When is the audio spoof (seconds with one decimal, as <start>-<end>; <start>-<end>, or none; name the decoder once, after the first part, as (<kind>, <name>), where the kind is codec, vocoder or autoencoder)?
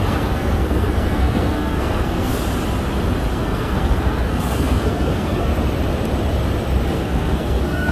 0.0-2.3 (codec, SNAC); 3.3-5.5; 6.9-7.9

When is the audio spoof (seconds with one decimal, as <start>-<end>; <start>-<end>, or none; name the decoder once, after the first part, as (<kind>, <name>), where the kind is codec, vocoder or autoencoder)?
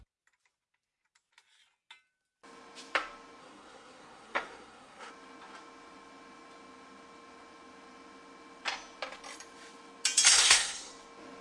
3.4-5.1 (codec, SNAC); 10.3-10.9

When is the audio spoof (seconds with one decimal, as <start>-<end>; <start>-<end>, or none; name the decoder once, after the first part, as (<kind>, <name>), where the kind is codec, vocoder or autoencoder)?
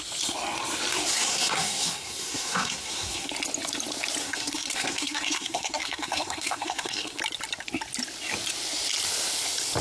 1.1-3.3 (codec, SNAC); 4.2-7.2